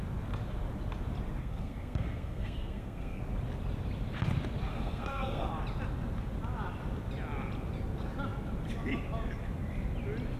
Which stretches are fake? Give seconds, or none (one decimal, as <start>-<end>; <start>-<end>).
1.4-3.2; 4.7-5.5